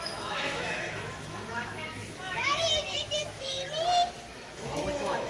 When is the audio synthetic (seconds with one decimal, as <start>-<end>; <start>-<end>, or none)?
0.0-2.6; 3.2-3.6; 4.3-5.3